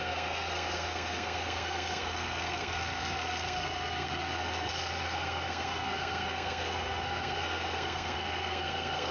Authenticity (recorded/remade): remade